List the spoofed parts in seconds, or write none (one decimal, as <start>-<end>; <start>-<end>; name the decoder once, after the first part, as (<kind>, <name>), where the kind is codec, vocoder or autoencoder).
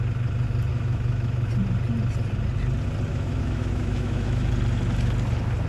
0.7-1.5 (autoencoder, DAC-VAE); 3.1-4.5